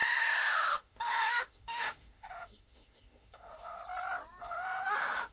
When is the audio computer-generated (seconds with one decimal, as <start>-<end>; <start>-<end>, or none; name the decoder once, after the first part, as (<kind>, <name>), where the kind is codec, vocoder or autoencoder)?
0.0-3.8 (autoencoder, DAC-VAE); 4.4-5.3